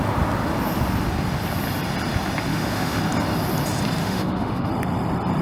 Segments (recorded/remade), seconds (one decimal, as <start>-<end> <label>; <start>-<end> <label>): 0.0-2.5 recorded; 2.5-3.0 remade; 3.0-4.0 recorded; 4.0-4.7 remade; 4.7-5.4 recorded